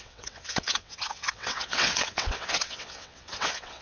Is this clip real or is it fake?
fake